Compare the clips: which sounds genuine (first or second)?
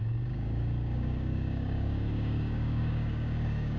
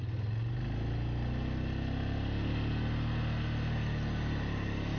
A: second